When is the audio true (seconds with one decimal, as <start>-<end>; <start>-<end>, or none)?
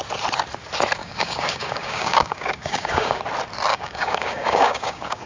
0.0-1.0; 3.2-3.7